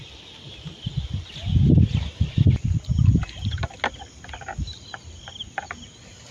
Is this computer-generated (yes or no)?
no